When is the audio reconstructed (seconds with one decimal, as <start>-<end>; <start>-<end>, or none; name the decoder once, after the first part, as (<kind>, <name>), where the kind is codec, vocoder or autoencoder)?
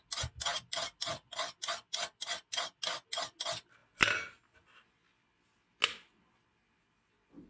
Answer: none